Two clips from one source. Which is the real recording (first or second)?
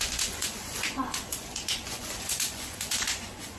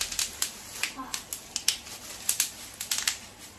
second